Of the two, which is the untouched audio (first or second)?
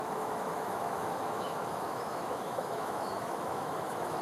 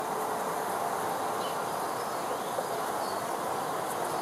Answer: second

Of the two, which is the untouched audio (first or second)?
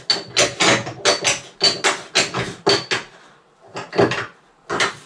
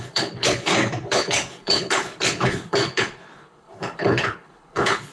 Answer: first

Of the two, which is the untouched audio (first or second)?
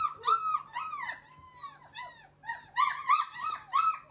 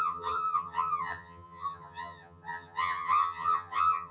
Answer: first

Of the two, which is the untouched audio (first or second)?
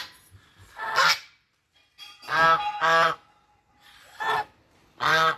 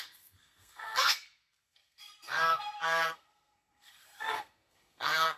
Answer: first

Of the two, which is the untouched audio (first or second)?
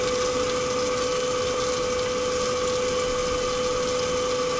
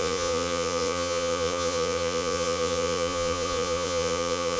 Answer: first